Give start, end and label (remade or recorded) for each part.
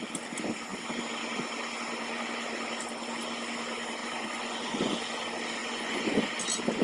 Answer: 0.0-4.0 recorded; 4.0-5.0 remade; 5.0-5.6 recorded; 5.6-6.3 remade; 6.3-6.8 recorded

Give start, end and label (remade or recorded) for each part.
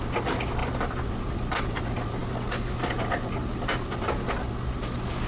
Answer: 0.0-5.3 recorded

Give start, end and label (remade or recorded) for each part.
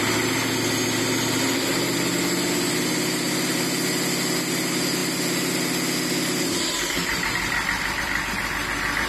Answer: 0.0-9.1 recorded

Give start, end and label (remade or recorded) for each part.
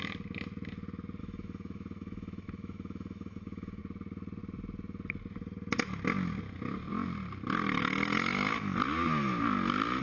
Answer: 0.0-1.2 recorded; 1.2-3.8 remade; 3.8-7.8 recorded; 7.8-8.6 remade; 8.6-10.0 recorded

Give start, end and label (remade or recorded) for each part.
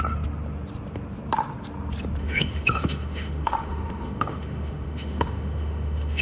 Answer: 0.0-2.2 recorded; 2.2-6.2 remade